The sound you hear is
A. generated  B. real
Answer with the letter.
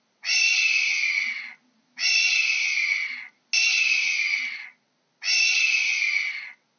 B